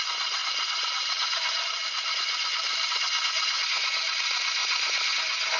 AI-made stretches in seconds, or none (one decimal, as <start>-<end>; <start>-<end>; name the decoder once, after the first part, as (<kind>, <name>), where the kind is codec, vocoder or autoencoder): 0.4-3.0 (vocoder, BigVGAN v2); 4.6-5.1